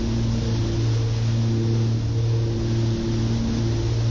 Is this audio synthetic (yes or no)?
no